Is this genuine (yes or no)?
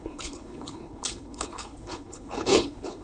no